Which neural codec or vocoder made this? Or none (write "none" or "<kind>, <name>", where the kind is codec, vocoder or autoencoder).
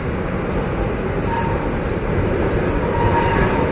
none